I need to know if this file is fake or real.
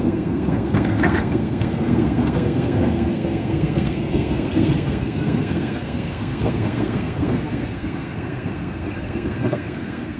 fake